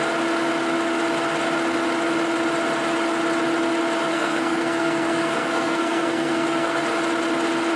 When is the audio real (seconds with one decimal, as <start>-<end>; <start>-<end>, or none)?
0.0-4.1; 6.8-7.8